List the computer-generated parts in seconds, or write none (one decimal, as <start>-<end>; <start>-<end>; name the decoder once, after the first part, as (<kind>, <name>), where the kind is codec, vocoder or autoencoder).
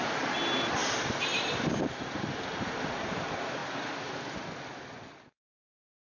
none